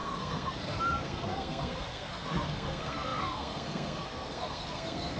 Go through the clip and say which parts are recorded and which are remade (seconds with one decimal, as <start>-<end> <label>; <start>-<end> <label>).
0.0-5.2 remade

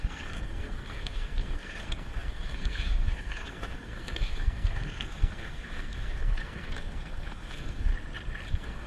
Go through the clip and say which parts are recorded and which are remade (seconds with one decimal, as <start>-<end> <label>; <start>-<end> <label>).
0.0-7.9 remade; 7.9-8.5 recorded; 8.5-8.9 remade